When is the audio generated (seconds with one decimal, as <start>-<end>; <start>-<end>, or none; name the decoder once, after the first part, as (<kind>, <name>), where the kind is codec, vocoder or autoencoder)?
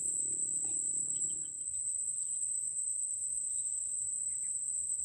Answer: 1.0-2.0 (autoencoder, DAC-VAE); 2.7-4.1